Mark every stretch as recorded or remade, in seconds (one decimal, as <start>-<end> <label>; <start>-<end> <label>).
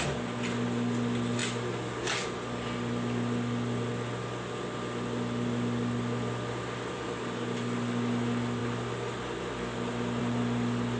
0.0-11.0 recorded